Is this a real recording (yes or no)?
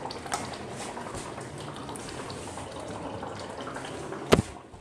yes